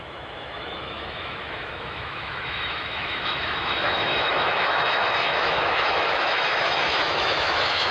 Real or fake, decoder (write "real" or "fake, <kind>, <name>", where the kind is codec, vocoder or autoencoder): fake, autoencoder, DAC-VAE